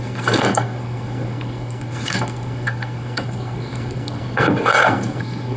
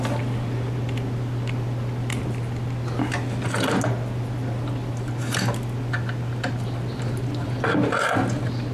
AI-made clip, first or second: first